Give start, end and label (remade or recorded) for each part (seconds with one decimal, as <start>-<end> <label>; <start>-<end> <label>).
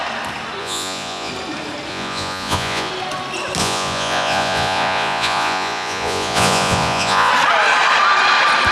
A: 0.0-0.6 recorded; 0.6-1.3 remade; 1.3-1.9 recorded; 1.9-2.9 remade; 2.9-3.6 recorded; 3.6-7.3 remade; 7.3-8.7 recorded